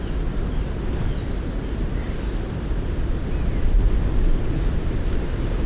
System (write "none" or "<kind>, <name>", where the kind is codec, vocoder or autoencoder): none